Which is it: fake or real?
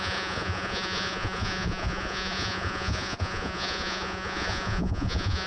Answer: fake